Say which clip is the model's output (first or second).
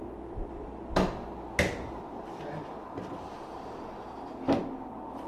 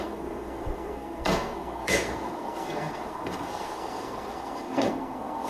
second